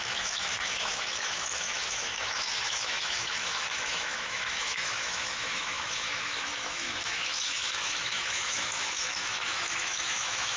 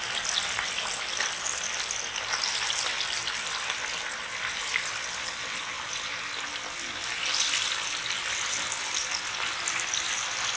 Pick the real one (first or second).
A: second